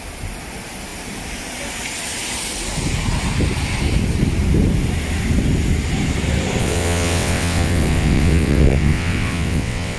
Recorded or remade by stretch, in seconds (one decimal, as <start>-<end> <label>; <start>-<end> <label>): 0.0-6.6 recorded; 6.6-10.0 remade